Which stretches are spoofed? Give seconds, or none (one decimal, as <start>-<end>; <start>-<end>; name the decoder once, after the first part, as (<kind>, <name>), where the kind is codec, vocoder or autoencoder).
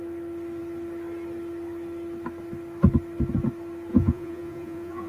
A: 3.9-5.1 (vocoder, Vocos)